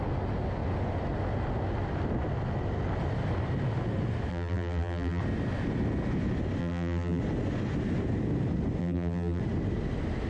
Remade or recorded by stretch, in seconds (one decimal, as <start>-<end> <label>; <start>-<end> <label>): 0.0-4.3 recorded; 4.3-5.2 remade; 5.2-6.6 recorded; 6.6-7.2 remade; 7.2-8.8 recorded; 8.8-9.4 remade; 9.4-10.3 recorded